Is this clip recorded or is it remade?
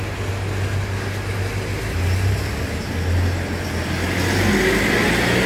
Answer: recorded